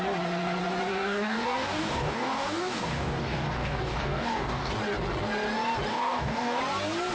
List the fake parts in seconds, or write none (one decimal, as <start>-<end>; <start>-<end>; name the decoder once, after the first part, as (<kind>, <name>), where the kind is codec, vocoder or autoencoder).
0.9-4.7 (codec, DAC); 5.9-6.6